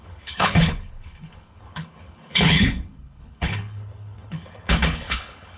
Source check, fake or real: fake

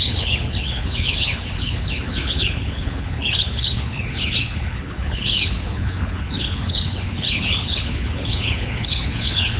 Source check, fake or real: fake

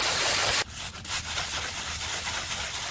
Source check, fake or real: real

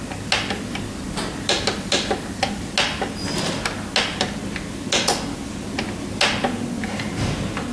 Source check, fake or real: real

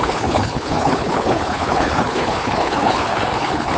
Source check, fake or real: fake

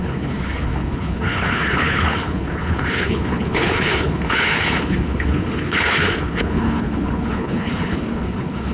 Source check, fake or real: fake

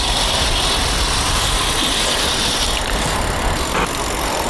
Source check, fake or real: real